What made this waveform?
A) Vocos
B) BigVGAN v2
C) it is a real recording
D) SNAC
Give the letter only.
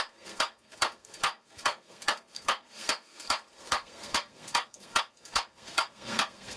D